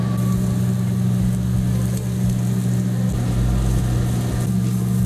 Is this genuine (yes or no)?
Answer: yes